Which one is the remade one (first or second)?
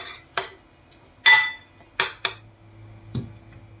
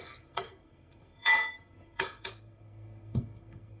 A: second